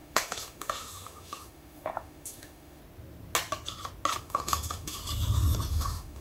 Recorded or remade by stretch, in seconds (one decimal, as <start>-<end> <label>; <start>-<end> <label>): 0.0-2.8 remade; 2.8-4.2 recorded; 4.2-5.0 remade; 5.0-5.7 recorded; 5.7-6.2 remade